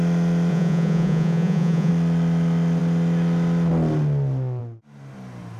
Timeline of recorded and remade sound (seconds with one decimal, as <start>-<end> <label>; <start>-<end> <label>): 0.0-0.5 recorded; 0.5-1.9 remade; 1.9-5.6 recorded